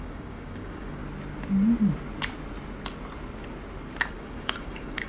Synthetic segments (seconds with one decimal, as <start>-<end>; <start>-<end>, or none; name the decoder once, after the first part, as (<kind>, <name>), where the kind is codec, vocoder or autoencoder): 0.0-1.0 (codec, DAC); 4.1-5.1